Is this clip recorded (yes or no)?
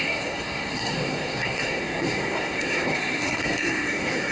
no